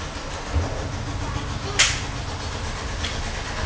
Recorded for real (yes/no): yes